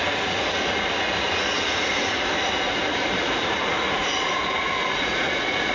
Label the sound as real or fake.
fake